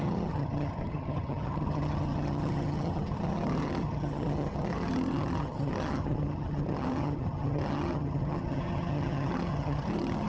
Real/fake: fake